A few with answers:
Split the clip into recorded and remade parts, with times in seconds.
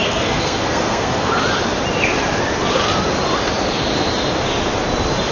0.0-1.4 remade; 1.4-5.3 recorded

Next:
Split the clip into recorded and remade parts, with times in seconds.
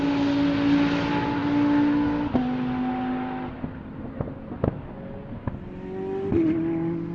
0.0-7.1 recorded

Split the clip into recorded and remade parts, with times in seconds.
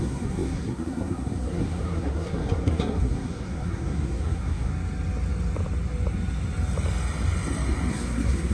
0.0-4.7 remade; 4.7-7.9 recorded; 7.9-8.5 remade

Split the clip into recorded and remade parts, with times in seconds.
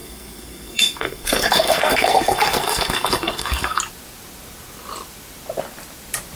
0.0-3.8 remade; 3.8-6.4 recorded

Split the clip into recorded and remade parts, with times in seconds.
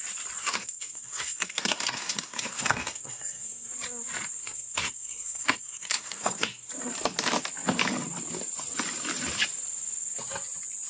0.0-0.4 recorded; 0.4-3.7 remade; 3.7-4.4 recorded; 4.4-6.7 remade; 6.7-10.9 recorded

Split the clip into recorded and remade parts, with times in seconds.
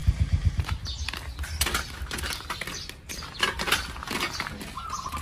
0.0-5.2 recorded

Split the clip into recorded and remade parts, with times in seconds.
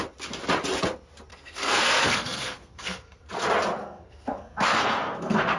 0.0-1.3 recorded; 1.3-3.3 remade; 3.3-3.8 recorded; 3.8-5.6 remade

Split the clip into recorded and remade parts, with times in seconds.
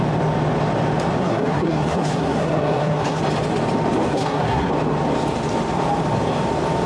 0.0-1.2 recorded; 1.2-3.2 remade; 3.2-4.1 recorded; 4.1-4.7 remade; 4.7-6.9 recorded